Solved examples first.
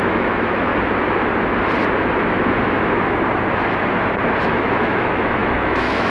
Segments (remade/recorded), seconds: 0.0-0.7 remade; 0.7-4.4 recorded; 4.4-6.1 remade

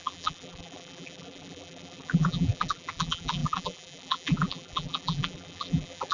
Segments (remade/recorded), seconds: 0.0-6.1 remade